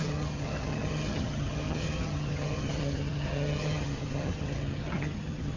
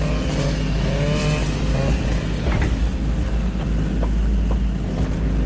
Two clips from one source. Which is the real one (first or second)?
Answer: second